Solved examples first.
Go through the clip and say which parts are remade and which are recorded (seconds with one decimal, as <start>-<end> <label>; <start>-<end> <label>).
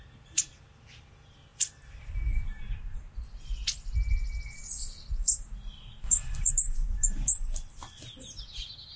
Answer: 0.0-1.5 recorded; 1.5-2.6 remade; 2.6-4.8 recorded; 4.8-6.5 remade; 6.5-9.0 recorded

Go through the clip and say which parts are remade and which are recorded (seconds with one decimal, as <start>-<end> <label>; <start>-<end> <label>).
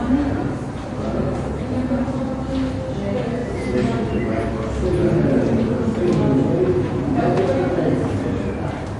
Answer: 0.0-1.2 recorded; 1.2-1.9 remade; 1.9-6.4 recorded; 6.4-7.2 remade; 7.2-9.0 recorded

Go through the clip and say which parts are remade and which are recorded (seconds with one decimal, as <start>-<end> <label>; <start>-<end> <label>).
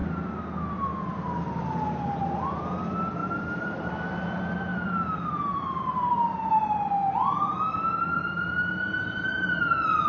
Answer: 0.0-3.2 recorded; 3.2-3.9 remade; 3.9-10.1 recorded